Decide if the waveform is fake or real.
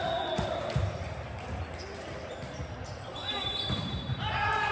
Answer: fake